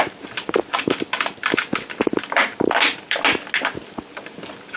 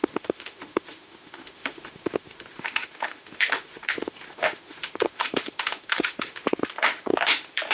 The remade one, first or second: second